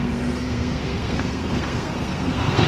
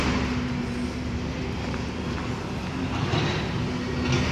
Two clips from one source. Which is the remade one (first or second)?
first